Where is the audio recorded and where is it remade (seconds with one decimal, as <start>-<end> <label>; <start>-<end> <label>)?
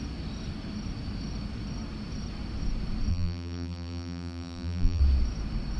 0.0-3.1 recorded; 3.1-5.0 remade; 5.0-5.8 recorded